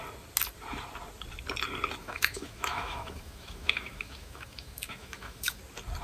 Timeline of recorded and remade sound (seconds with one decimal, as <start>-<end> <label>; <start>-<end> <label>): 0.0-2.0 recorded; 2.0-5.6 remade; 5.6-6.0 recorded